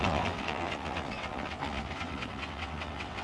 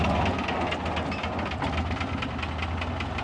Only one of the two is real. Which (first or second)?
second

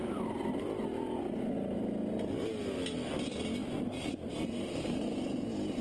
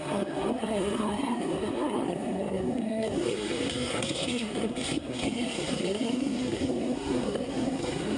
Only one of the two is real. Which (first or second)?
first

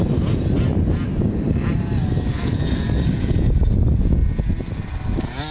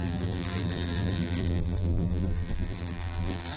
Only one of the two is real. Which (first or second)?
first